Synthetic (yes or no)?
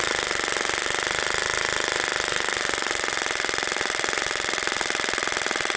no